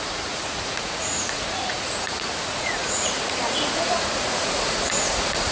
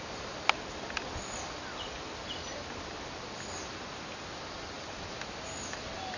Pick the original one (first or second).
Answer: second